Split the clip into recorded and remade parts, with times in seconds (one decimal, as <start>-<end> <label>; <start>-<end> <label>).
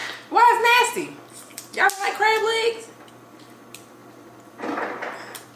0.0-5.6 recorded